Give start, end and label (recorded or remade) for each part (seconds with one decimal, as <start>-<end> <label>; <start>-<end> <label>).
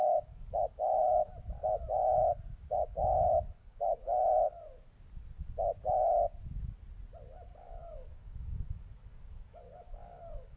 0.0-1.3 remade; 1.3-2.7 recorded; 2.7-4.0 remade; 4.0-7.6 recorded; 7.6-10.6 remade